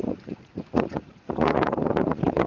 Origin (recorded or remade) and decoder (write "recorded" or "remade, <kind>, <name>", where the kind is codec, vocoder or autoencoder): remade, vocoder, Vocos